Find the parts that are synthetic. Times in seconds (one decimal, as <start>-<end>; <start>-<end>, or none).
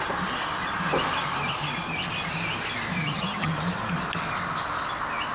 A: 3.0-3.5